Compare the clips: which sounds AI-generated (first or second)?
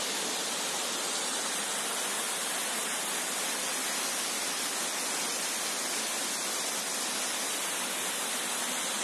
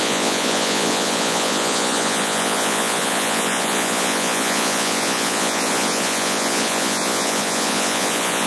second